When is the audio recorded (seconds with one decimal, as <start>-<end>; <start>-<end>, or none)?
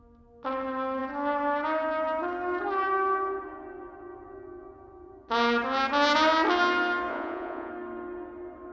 0.0-7.1; 7.7-8.7